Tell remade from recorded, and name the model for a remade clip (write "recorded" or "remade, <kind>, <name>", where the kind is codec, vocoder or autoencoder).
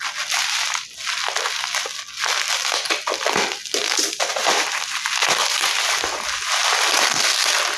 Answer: recorded